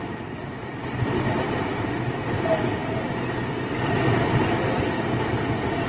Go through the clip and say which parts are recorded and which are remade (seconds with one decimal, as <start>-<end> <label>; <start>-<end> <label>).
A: 0.0-5.9 recorded